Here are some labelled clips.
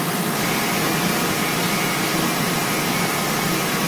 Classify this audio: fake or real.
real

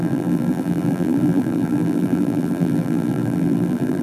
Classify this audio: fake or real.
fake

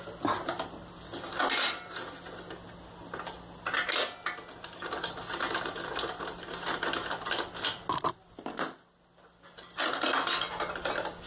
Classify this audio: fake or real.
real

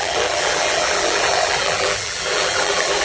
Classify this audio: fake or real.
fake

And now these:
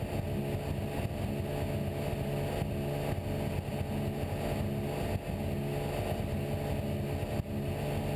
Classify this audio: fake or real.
real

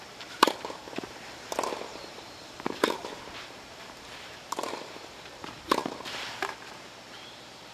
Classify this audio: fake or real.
fake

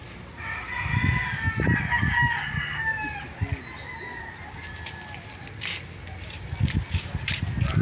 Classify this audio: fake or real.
real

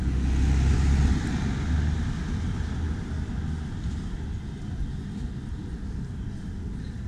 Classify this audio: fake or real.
real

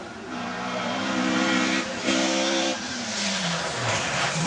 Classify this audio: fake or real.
fake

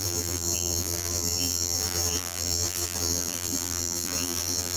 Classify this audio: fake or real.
fake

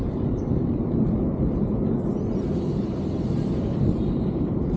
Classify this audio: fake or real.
fake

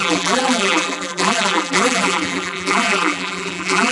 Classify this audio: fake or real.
fake